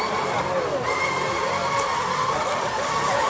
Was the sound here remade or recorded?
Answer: recorded